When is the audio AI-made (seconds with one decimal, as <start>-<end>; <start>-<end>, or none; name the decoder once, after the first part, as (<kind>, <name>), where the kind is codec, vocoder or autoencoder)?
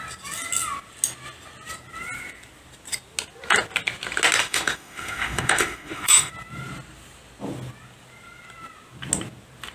4.4-6.3 (autoencoder, DAC-VAE)